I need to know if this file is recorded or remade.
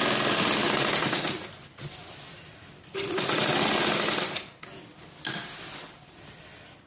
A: recorded